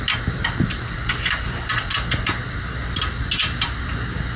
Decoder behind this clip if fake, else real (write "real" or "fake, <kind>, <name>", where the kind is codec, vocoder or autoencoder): real